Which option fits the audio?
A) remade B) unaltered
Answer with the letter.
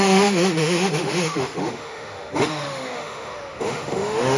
A